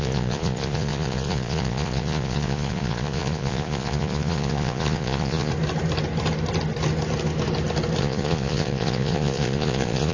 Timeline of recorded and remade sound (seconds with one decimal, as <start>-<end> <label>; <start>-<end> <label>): 0.0-5.5 remade; 5.5-8.0 recorded; 8.0-10.1 remade